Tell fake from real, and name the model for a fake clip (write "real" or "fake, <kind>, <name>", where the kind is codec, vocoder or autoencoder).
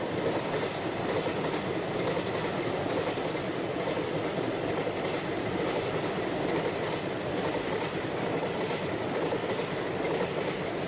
real